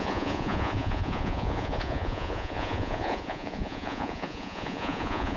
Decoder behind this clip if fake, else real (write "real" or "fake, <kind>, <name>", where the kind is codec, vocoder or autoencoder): fake, vocoder, Vocos